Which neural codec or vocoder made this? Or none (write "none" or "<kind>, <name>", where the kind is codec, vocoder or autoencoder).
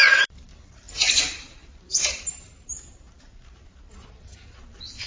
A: vocoder, BigVGAN v2